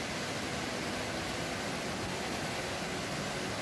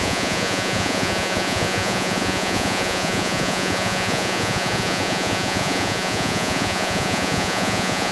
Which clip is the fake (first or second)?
second